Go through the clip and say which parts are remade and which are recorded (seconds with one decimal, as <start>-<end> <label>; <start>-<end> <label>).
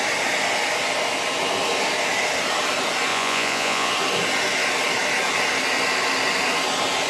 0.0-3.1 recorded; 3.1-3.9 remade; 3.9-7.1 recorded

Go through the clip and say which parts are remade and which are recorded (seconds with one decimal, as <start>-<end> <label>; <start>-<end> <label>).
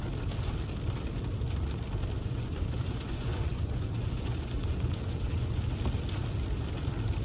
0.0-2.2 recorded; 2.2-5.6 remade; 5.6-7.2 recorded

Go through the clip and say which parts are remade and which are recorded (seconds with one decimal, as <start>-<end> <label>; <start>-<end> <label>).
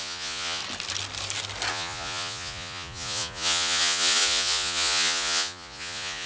0.0-0.6 remade; 0.6-1.7 recorded; 1.7-6.3 remade